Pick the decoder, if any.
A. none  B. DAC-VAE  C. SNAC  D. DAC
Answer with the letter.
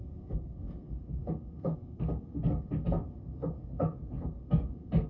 C